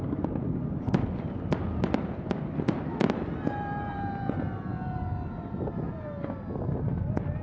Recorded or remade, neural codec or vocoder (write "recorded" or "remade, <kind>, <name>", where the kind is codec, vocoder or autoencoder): recorded